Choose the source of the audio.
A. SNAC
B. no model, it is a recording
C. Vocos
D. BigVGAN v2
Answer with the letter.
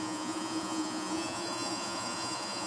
C